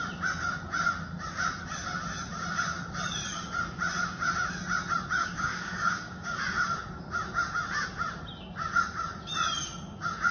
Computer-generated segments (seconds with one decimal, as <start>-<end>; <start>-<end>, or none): 5.2-6.4